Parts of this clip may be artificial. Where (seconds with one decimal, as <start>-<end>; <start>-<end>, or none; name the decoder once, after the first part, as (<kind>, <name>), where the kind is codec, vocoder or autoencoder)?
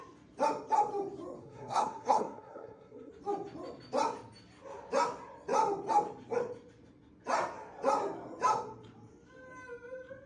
1.4-3.1 (codec, SNAC)